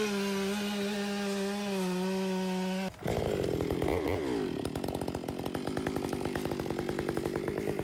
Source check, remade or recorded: recorded